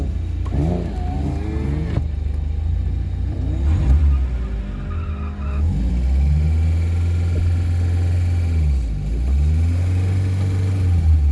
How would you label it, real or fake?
real